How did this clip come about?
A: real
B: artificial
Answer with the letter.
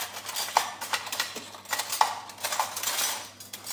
A